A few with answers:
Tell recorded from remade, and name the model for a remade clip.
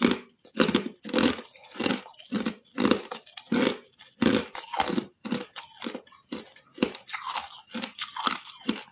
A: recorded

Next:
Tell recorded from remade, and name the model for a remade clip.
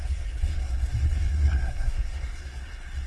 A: remade, codec, SNAC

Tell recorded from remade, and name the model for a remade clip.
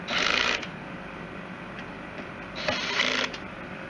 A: recorded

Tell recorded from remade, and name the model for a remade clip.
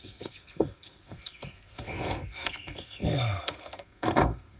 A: remade, codec, SNAC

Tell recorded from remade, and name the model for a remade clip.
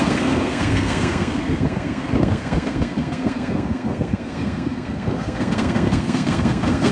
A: remade, codec, SNAC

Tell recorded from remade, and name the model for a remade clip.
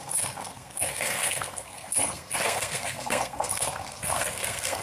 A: remade, codec, SNAC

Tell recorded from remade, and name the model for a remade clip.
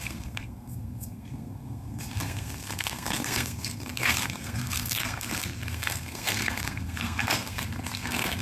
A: remade, codec, SNAC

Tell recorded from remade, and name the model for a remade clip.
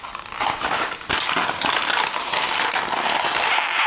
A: recorded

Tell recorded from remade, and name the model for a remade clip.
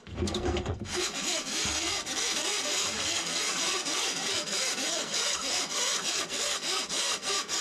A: remade, codec, SNAC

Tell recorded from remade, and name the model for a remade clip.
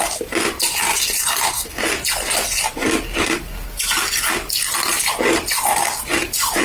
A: recorded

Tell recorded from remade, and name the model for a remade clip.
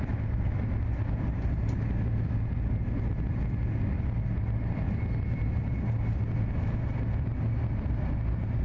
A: recorded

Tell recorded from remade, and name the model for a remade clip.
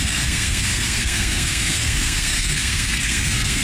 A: remade, codec, SNAC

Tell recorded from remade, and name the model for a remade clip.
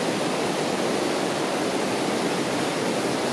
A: recorded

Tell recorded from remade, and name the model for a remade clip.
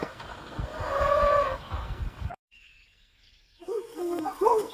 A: remade, codec, SNAC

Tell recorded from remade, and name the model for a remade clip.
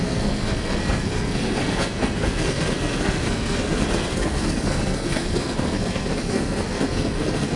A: remade, codec, SNAC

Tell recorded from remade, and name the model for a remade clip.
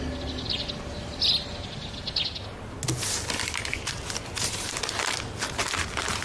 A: recorded